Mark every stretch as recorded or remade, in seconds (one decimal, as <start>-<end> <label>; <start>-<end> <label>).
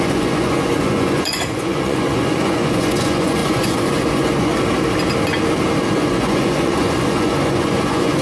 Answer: 0.0-4.5 remade; 4.5-5.9 recorded; 5.9-8.2 remade